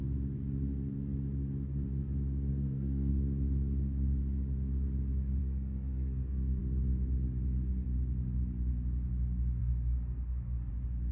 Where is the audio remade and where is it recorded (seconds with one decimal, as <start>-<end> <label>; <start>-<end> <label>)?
0.0-2.5 recorded; 2.5-3.1 remade; 3.1-5.4 recorded; 5.4-6.6 remade; 6.6-9.6 recorded; 9.6-10.7 remade; 10.7-11.1 recorded